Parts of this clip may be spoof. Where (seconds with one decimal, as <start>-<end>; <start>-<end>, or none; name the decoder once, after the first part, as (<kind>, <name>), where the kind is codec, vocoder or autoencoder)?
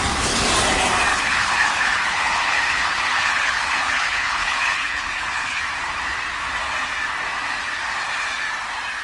1.1-5.6 (codec, HILCodec)